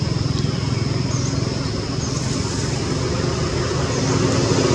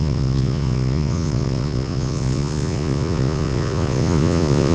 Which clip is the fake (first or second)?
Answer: second